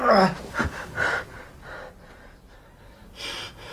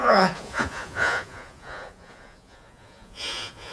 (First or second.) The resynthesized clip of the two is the second